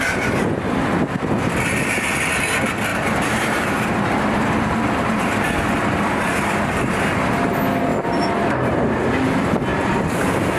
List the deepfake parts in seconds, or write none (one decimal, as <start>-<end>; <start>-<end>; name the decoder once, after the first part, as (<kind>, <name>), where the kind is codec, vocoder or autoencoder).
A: 2.9-6.9 (vocoder, BigVGAN v2); 7.9-8.5